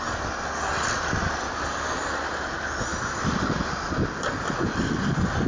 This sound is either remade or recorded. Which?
recorded